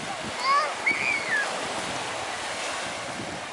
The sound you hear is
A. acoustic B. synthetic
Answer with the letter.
A